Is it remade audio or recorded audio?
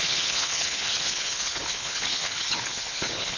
remade